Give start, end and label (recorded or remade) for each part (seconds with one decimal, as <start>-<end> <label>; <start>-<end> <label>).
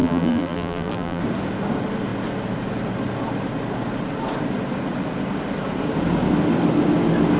0.0-1.2 remade; 1.2-7.4 recorded